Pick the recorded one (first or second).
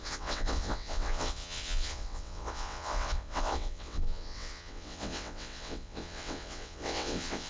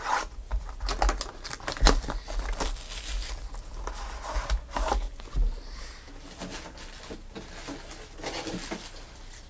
second